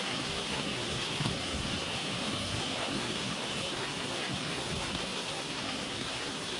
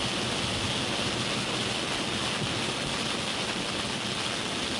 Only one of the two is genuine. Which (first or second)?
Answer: second